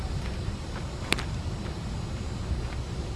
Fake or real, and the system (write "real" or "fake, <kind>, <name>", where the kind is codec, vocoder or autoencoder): real